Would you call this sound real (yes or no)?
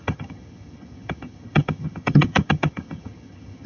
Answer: no